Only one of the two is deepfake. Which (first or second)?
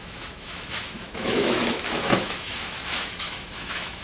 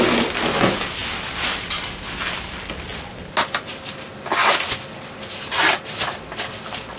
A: first